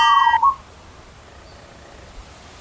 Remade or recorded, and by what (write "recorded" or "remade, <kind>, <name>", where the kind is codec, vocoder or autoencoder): recorded